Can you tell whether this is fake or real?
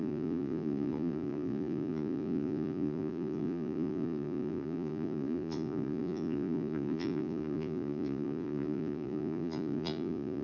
fake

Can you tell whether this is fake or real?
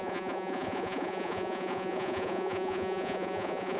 fake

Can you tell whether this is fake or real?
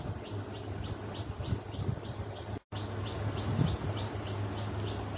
real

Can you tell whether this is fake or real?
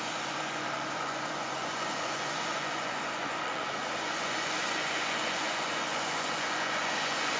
fake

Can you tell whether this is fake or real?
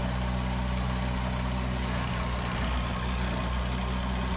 real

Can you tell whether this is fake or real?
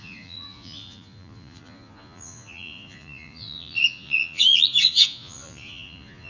fake